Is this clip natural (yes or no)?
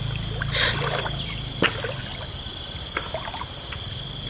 yes